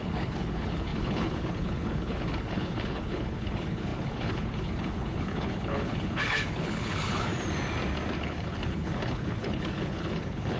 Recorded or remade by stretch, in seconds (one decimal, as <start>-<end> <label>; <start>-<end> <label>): 0.0-7.3 remade; 7.3-8.2 recorded; 8.2-10.6 remade